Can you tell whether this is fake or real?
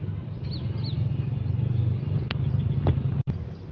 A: real